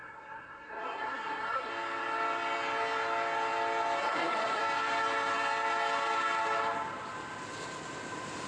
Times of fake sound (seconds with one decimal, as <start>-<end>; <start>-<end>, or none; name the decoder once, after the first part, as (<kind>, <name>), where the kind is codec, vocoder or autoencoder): 0.0-1.7 (codec, SNAC); 4.0-4.6